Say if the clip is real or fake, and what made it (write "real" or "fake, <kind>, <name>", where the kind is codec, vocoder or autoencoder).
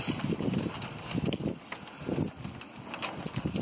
real